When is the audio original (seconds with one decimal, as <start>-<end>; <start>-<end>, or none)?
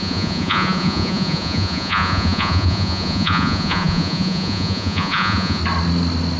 5.6-6.4